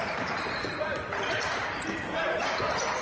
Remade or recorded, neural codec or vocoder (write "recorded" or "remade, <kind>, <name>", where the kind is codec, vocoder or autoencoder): remade, vocoder, BigVGAN v2